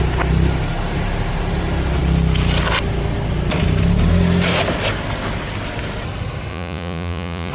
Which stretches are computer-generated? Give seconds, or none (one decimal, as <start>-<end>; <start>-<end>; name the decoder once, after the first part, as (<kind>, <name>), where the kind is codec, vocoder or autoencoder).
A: 6.5-7.5 (vocoder, Vocos)